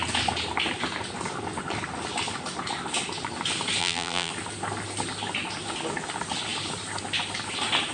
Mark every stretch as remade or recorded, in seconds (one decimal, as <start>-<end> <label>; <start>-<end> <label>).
0.0-3.8 recorded; 3.8-4.3 remade; 4.3-7.9 recorded